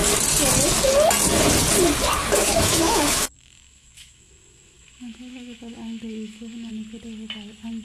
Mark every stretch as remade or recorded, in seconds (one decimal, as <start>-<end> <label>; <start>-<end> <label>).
0.0-2.2 recorded; 2.2-6.7 remade; 6.7-7.8 recorded